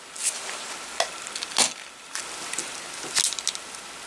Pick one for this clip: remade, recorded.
recorded